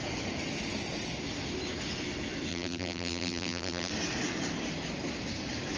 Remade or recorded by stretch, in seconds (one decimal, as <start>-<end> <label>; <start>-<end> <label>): 0.0-2.5 recorded; 2.5-3.9 remade; 3.9-5.8 recorded